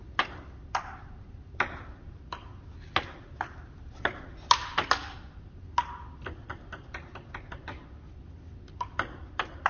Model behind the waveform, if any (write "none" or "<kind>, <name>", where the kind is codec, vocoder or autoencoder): none